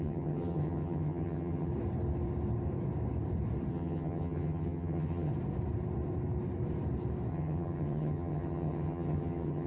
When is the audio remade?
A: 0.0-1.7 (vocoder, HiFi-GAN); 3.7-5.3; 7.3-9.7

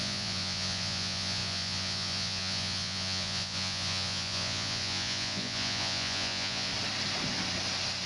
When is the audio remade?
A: 0.0-6.7 (vocoder, Vocos)

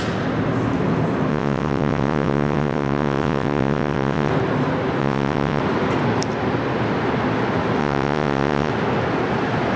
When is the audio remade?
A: 1.3-4.3 (vocoder, WaveNeXt); 5.0-5.6; 7.8-8.7

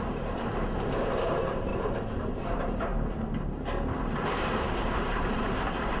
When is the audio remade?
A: 0.0-0.5 (vocoder, BigVGAN v2); 1.1-1.7; 2.3-2.9; 4.0-6.0

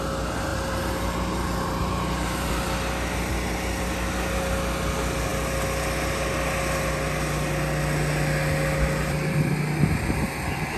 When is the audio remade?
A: 0.5-2.5 (vocoder, BigVGAN v2)